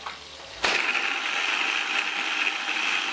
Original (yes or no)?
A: yes